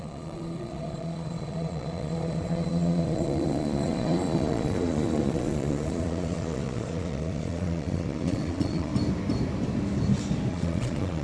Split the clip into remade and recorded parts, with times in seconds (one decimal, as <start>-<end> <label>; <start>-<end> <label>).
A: 0.0-8.9 remade; 8.9-10.5 recorded; 10.5-11.2 remade